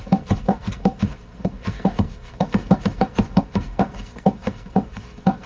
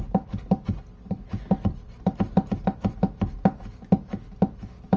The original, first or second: second